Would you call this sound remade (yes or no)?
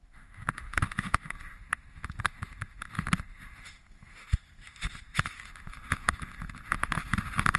yes